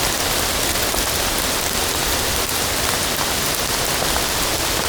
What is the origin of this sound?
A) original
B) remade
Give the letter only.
A